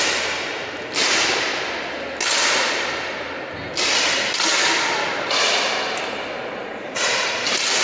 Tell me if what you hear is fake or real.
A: real